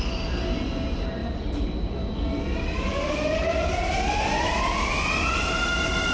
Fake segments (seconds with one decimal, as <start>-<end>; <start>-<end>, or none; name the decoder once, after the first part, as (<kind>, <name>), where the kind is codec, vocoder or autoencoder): 1.2-4.9 (vocoder, BigVGAN v2)